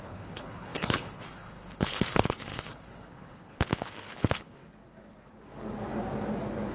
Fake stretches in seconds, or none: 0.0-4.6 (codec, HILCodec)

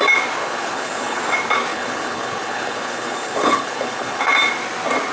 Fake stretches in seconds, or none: 0.4-1.2 (codec, HILCodec); 1.7-4.2

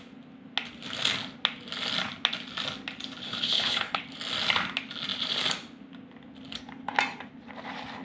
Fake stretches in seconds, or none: 3.2-4.0 (codec, HILCodec)

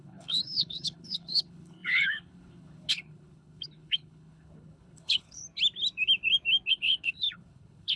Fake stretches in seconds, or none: 0.0-5.4 (codec, HILCodec); 6.7-8.0